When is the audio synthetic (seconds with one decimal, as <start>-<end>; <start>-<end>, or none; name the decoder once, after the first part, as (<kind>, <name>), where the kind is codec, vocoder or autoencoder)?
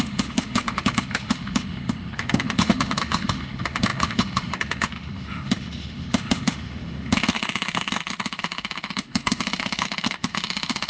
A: 0.0-10.9 (autoencoder, DAC-VAE)